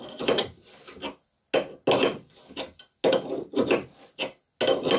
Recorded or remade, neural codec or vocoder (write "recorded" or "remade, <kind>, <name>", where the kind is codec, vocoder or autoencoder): recorded